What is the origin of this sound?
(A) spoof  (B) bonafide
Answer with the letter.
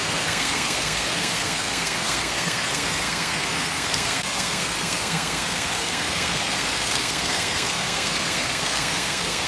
A